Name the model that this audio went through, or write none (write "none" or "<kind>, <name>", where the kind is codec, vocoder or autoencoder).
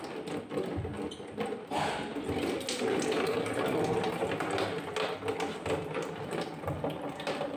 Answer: none